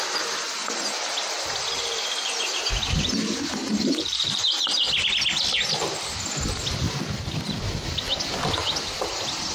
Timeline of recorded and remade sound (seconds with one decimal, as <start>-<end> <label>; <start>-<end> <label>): 0.0-3.6 recorded; 3.6-4.8 remade; 4.8-9.5 recorded